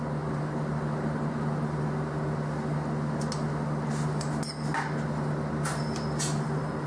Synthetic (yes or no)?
no